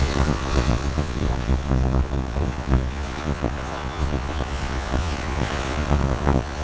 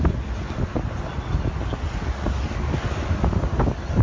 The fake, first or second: first